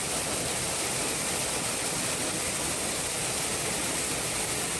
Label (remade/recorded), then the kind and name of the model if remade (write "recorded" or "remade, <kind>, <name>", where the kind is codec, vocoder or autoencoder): recorded